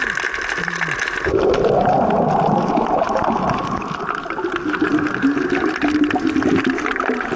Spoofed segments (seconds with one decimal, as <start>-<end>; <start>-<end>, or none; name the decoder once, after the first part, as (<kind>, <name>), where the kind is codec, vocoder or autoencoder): none